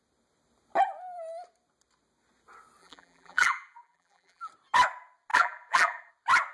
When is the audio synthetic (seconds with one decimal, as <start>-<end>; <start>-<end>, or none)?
2.8-4.5; 5.3-6.1